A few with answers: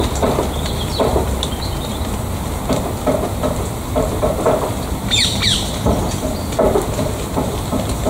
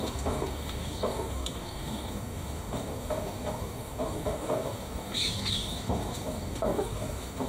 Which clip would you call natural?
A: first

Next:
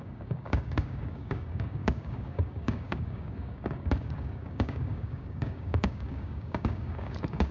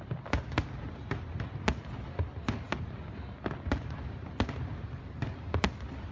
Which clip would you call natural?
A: second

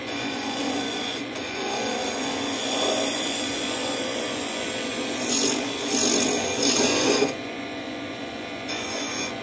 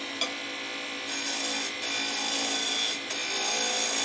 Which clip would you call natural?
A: second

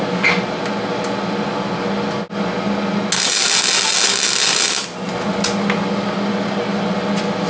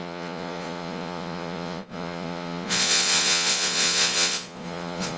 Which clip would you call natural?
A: first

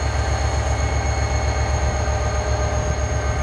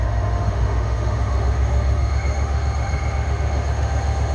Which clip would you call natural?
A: first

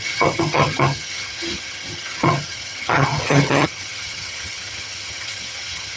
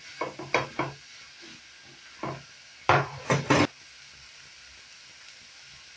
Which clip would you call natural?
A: second